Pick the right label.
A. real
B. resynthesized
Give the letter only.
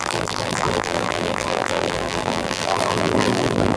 B